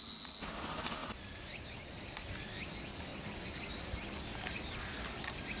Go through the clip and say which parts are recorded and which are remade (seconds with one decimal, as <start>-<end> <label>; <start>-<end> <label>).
0.0-5.6 recorded